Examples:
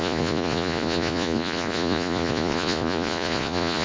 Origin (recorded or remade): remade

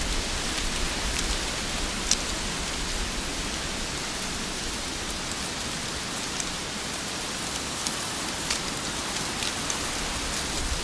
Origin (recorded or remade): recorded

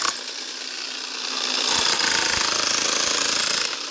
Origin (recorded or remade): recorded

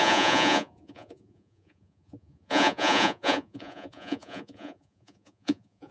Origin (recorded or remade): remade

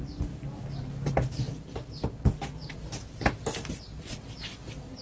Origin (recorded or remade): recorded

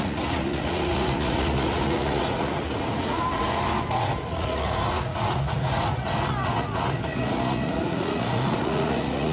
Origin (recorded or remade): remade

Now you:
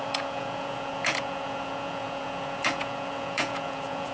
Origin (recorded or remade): remade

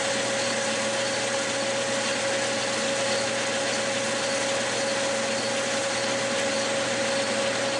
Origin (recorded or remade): recorded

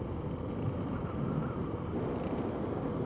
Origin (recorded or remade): recorded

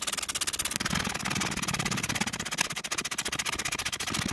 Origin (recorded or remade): recorded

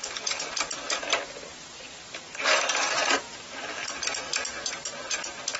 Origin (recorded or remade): recorded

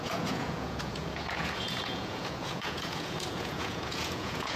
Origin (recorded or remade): remade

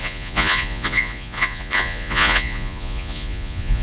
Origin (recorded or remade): remade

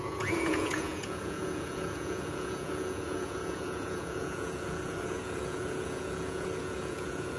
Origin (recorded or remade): remade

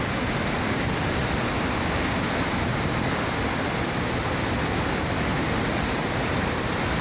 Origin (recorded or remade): recorded